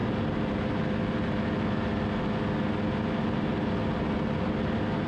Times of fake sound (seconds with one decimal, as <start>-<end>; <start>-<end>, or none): none